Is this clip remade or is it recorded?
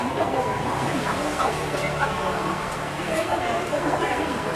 remade